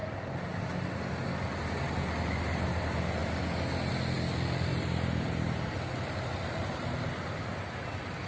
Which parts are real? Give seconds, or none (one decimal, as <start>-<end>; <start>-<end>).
0.0-4.7; 5.8-8.3